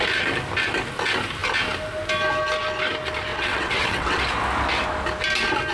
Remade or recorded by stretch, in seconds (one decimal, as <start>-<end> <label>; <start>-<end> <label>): 0.0-3.3 recorded; 3.3-4.2 remade; 4.2-5.7 recorded

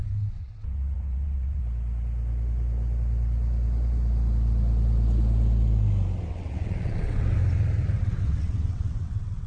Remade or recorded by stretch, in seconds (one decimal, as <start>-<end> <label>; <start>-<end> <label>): 0.0-1.6 remade; 1.6-6.3 recorded; 6.3-7.4 remade; 7.4-8.0 recorded; 8.0-9.5 remade

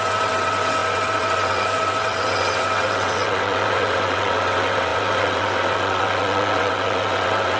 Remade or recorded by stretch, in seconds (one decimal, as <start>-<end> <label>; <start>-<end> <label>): 0.0-7.6 remade

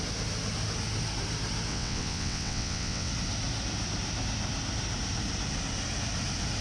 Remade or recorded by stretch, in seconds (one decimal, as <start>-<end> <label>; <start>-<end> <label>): 0.0-1.7 recorded; 1.7-3.1 remade; 3.1-6.6 recorded

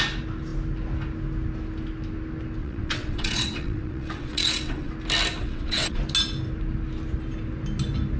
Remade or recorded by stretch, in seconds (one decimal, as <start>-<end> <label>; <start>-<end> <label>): 0.0-2.6 recorded; 2.6-4.9 remade; 4.9-5.4 recorded; 5.4-6.0 remade; 6.0-8.2 recorded

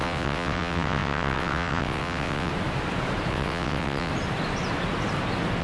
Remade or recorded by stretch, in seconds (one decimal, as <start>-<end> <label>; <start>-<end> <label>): 0.0-2.5 remade; 2.5-3.3 recorded; 3.3-4.1 remade; 4.1-5.6 recorded